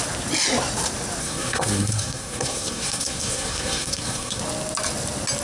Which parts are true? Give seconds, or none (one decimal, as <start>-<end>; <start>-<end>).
0.0-1.2; 4.4-5.4